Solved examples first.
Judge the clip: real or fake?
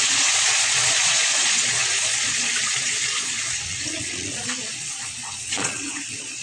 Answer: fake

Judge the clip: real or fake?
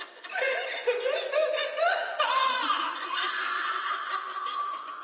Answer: fake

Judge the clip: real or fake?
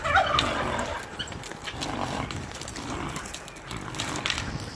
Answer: fake